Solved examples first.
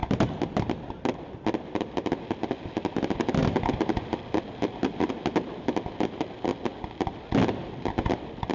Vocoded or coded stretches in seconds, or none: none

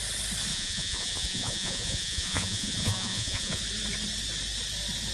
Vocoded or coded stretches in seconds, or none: 0.5-3.6 (vocoder, Vocos)